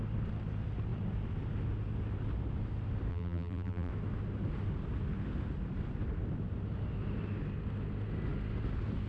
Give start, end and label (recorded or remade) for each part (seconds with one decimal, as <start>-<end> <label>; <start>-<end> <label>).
0.0-3.1 recorded; 3.1-3.9 remade; 3.9-9.1 recorded